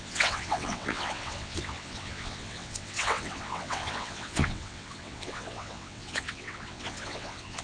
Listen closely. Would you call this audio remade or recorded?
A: remade